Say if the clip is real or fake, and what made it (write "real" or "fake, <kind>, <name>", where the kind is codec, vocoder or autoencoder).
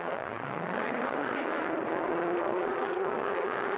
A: fake, vocoder, Vocos